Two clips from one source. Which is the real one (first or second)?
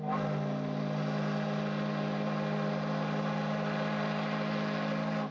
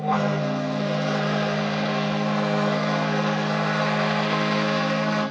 first